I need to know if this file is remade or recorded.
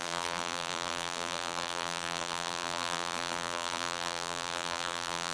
remade